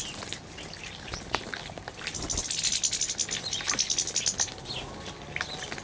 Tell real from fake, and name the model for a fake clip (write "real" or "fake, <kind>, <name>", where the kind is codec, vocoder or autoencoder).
real